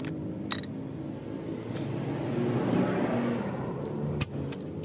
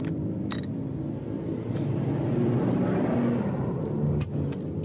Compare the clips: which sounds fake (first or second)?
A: second